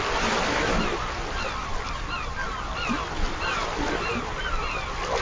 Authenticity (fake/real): real